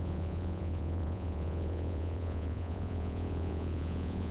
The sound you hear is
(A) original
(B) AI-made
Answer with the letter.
B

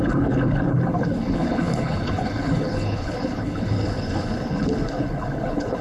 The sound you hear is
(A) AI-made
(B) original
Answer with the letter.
A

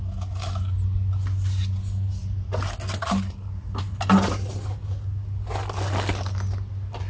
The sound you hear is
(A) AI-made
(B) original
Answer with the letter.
B